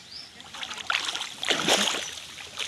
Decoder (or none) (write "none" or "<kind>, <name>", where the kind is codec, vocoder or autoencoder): none